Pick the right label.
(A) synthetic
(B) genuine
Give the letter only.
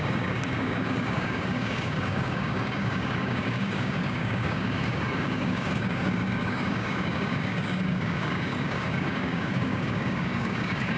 A